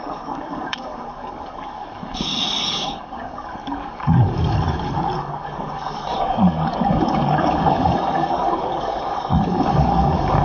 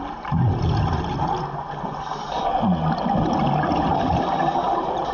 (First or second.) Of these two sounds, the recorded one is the second